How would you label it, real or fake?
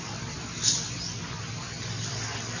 real